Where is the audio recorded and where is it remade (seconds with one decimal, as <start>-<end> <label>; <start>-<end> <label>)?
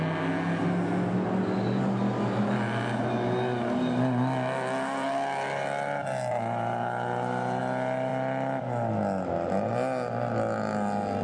0.0-11.2 recorded